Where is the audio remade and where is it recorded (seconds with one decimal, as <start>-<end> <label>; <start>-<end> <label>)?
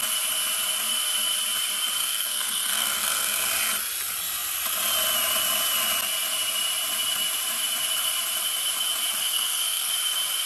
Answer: 0.0-2.0 recorded; 2.0-3.5 remade; 3.5-9.2 recorded; 9.2-9.9 remade; 9.9-10.5 recorded